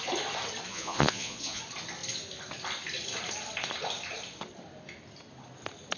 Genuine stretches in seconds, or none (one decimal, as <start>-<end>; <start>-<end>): 0.0-0.7; 1.6-6.0